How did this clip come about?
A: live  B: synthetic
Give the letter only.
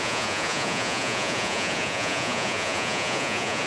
B